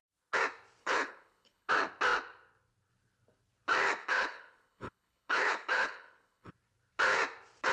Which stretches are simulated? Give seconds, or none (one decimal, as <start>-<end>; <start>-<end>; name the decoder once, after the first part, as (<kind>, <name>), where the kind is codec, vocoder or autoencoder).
0.8-1.7 (codec, HILCodec); 4.0-6.5